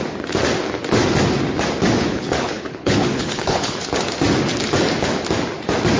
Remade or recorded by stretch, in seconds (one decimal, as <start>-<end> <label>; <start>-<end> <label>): 0.0-2.1 recorded; 2.1-3.8 remade; 3.8-6.0 recorded